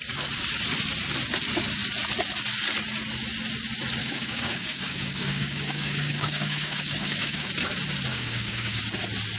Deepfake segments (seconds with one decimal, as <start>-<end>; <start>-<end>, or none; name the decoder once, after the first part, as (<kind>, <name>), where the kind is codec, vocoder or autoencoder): 4.0-7.5 (codec, DAC); 8.1-8.8